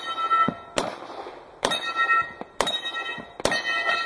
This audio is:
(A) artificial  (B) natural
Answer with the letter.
B